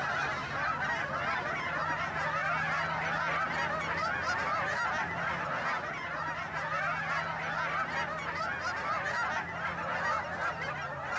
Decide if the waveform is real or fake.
real